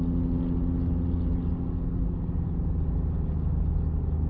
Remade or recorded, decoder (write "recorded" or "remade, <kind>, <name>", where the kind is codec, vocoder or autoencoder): recorded